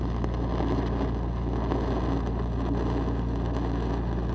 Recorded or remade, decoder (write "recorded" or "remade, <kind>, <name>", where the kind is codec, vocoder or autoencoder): recorded